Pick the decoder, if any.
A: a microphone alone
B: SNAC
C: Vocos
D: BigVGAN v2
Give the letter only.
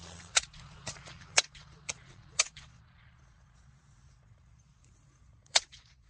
C